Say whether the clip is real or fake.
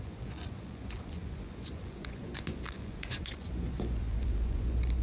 fake